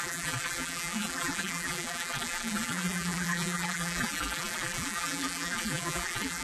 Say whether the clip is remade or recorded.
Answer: remade